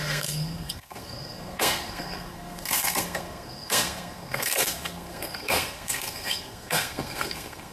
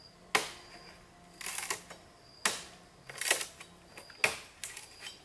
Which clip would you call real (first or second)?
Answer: second